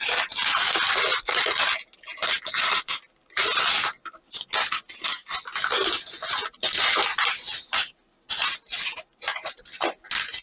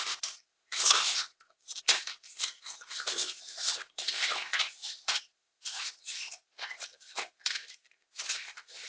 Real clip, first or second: first